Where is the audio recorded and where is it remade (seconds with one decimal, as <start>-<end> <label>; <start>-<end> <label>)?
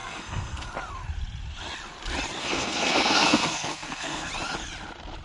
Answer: 0.0-0.7 remade; 0.7-2.4 recorded; 2.4-4.3 remade; 4.3-5.2 recorded